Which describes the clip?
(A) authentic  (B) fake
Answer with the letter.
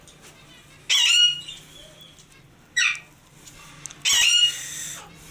A